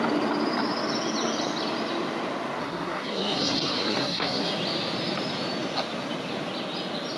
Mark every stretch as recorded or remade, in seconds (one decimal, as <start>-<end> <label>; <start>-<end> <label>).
0.0-2.6 recorded; 2.6-4.5 remade; 4.5-7.2 recorded